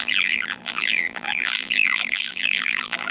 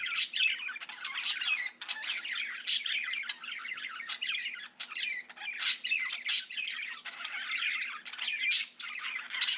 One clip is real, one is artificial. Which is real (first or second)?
second